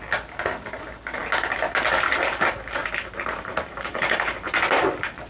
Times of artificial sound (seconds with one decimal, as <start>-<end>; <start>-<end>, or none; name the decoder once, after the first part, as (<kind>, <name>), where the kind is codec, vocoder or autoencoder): 2.8-4.5 (vocoder, BigVGAN v2)